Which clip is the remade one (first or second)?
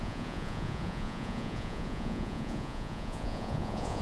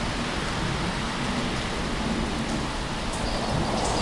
first